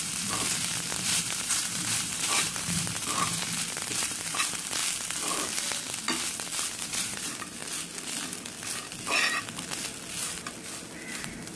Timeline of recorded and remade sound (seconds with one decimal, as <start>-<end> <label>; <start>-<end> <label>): 0.0-4.8 remade; 4.8-6.8 recorded; 6.8-7.6 remade; 7.6-11.1 recorded; 11.1-11.6 remade